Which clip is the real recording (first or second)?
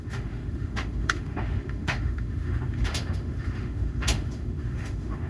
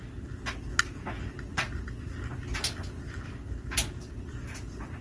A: second